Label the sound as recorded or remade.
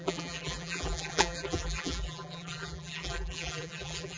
remade